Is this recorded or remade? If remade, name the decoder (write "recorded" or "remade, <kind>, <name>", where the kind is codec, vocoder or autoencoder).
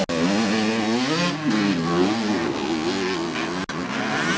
recorded